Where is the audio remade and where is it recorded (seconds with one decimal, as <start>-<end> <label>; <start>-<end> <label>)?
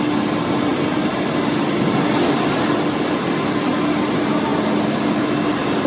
0.0-0.7 recorded; 0.7-1.7 remade; 1.7-5.9 recorded